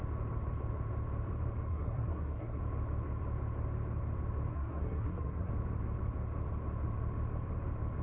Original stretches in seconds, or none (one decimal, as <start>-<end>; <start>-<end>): 0.0-1.7; 2.6-4.5; 5.5-8.0